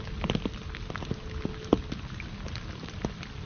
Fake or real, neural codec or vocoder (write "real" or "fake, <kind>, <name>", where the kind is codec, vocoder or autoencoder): real